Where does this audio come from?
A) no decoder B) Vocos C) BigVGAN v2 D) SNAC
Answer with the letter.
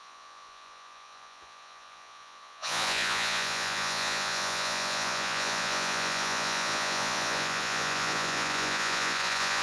B